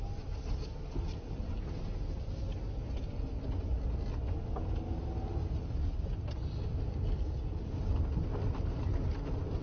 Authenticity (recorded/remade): recorded